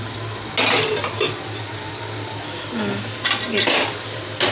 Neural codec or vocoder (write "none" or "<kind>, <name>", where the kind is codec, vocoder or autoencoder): none